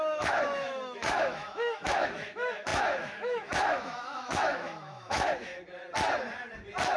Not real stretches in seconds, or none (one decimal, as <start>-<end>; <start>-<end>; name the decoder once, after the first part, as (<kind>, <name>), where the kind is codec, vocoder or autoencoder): 0.0-5.5 (autoencoder, DAC-VAE)